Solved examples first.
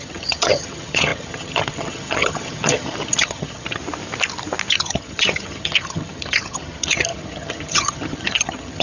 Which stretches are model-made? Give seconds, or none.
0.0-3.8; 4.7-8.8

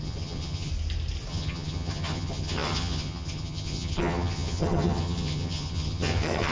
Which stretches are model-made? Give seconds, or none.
0.0-0.7; 1.3-6.5

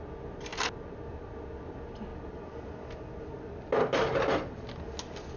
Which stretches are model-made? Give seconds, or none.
none

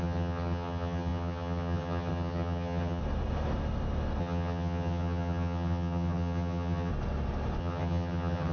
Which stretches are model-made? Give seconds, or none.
0.0-3.0; 4.2-6.9; 7.6-8.5

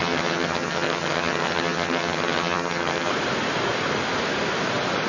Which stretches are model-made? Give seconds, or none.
0.0-3.1

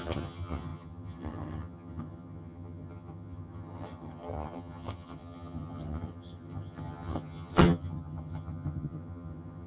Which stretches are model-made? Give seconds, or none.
0.0-9.7

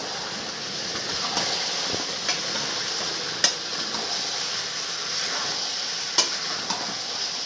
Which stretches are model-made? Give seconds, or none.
none

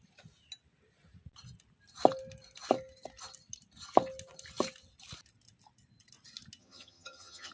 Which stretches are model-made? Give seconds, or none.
6.6-7.5